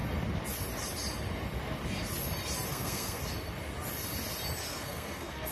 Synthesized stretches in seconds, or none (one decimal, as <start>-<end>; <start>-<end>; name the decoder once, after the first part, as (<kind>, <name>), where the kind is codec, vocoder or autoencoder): 2.7-3.2 (codec, SNAC); 4.7-5.5